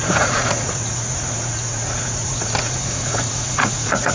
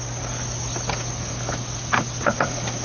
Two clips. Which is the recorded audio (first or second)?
second